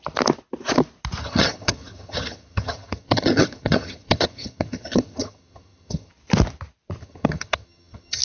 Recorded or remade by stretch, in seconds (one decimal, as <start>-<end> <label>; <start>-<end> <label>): 0.0-1.2 recorded; 1.2-6.1 remade; 6.1-7.0 recorded; 7.0-8.2 remade